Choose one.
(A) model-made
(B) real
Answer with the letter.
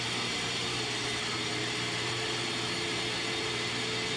B